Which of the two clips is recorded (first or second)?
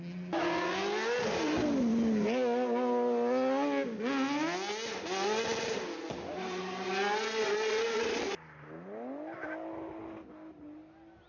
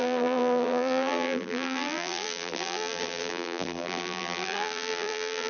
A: first